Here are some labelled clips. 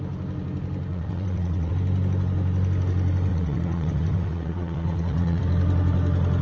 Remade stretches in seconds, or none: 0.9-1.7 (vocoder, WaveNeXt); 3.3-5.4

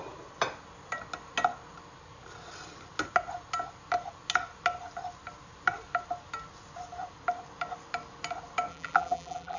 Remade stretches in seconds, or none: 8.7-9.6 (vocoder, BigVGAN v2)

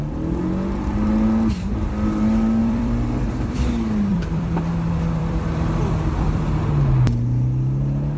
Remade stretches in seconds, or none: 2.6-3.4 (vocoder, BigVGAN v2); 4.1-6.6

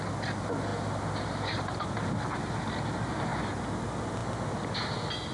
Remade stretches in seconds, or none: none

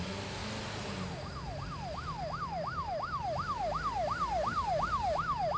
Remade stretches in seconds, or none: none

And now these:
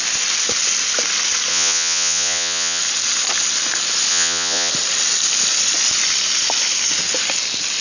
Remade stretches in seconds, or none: 1.5-2.8 (vocoder, Vocos); 4.1-4.7